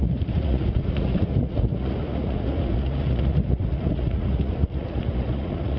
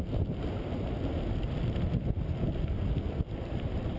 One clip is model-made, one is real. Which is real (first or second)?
second